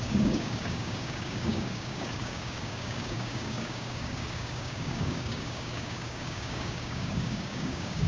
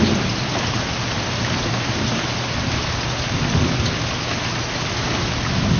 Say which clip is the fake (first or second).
first